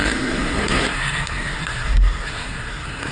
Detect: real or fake fake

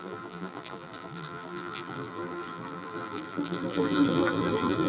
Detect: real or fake fake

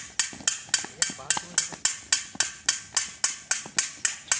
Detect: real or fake real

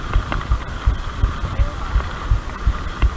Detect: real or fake real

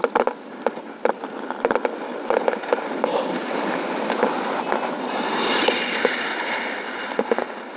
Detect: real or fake real